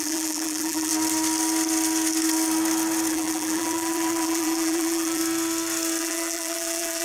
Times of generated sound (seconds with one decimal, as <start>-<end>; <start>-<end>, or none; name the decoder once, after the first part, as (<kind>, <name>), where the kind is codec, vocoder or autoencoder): 0.0-0.9 (vocoder, BigVGAN v2); 3.1-5.2; 6.0-7.0